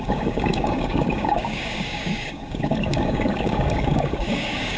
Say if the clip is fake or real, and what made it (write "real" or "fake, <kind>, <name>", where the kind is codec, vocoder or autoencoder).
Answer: fake, codec, DAC